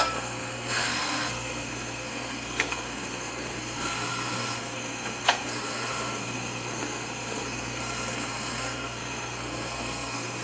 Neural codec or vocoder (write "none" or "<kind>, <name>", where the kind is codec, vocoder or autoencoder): codec, SNAC